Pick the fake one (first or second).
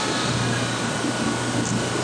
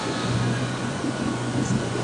second